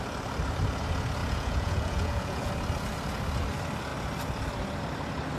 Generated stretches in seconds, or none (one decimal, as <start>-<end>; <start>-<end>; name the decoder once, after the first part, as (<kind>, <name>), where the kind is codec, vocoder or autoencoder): 1.2-2.5 (vocoder, Vocos)